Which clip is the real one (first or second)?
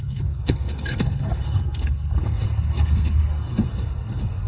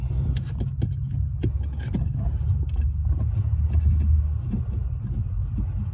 second